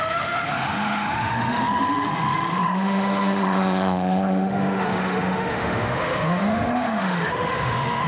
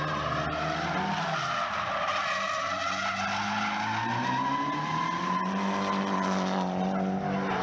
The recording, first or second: second